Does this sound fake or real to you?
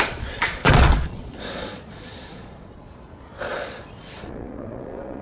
fake